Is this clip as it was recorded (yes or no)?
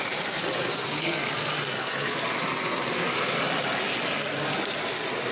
yes